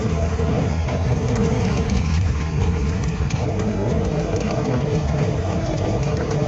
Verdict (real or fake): fake